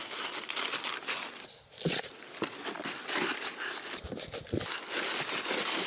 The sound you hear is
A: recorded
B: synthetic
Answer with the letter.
A